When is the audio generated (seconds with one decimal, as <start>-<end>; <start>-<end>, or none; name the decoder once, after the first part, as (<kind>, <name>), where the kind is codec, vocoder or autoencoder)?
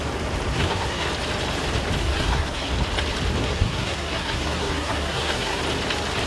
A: 0.5-1.1 (codec, SNAC); 2.0-2.7; 3.4-5.6